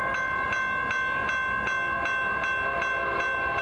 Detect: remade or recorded recorded